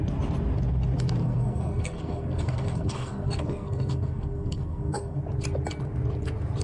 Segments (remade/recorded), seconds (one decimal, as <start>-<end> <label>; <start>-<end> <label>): 0.0-1.2 recorded; 1.2-5.2 remade; 5.2-6.6 recorded